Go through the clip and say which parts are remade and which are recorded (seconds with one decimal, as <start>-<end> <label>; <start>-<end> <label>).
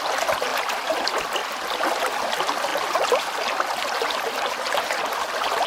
0.0-0.5 recorded; 0.5-1.0 remade; 1.0-1.4 recorded; 1.4-2.0 remade; 2.0-5.7 recorded